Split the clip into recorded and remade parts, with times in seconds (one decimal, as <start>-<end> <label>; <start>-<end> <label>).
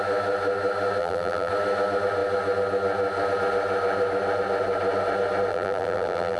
0.0-1.0 recorded; 1.0-1.5 remade; 1.5-5.5 recorded; 5.5-6.4 remade